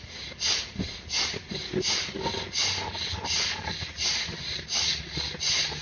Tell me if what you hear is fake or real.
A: real